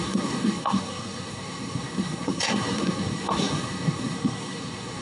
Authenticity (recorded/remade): remade